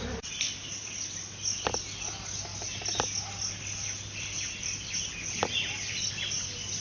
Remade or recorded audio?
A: recorded